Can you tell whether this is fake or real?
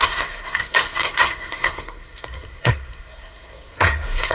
fake